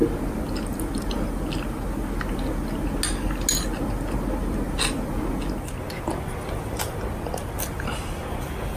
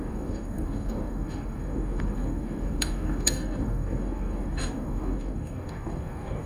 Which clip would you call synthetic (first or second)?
second